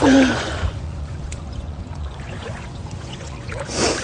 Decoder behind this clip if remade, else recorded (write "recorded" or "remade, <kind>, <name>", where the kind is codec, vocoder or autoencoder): remade, vocoder, Vocos